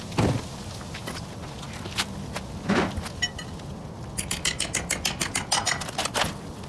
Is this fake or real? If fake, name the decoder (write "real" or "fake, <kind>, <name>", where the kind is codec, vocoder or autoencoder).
real